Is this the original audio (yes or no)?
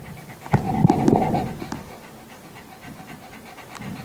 no